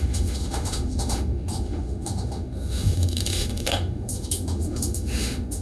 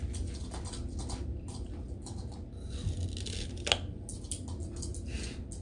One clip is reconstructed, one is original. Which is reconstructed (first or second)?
first